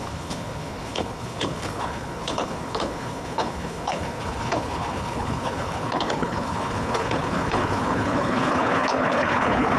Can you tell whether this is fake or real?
fake